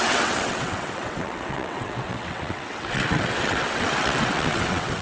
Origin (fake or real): fake